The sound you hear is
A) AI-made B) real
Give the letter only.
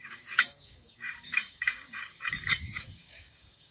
A